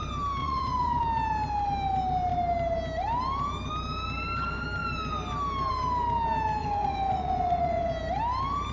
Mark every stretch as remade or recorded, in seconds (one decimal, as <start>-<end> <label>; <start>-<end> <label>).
0.0-0.4 recorded; 0.4-1.0 remade; 1.0-6.6 recorded; 6.6-7.9 remade; 7.9-8.7 recorded